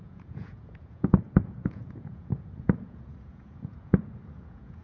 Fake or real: fake